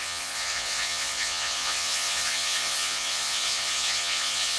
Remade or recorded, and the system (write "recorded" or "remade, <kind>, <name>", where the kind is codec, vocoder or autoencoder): remade, vocoder, Vocos